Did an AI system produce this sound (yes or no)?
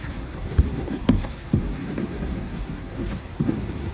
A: yes